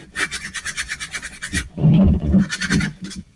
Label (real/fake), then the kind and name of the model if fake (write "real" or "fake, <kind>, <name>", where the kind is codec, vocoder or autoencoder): fake, vocoder, Vocos